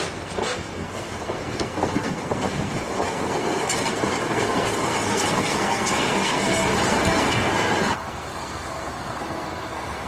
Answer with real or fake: fake